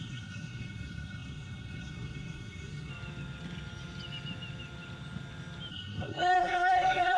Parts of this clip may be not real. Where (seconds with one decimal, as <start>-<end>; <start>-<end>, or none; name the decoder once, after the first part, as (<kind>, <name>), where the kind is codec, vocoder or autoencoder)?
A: 0.0-2.9 (codec, SNAC); 5.7-7.2